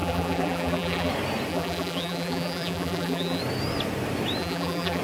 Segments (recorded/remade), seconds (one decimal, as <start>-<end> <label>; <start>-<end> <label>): 0.0-1.1 remade; 1.1-1.5 recorded; 1.5-3.4 remade; 3.4-4.4 recorded; 4.4-5.0 remade